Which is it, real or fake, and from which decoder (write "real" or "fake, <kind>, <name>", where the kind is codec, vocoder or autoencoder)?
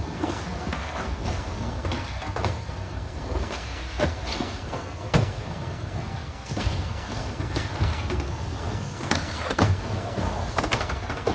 fake, codec, SNAC